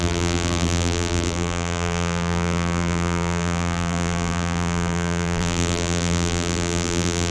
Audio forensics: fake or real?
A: fake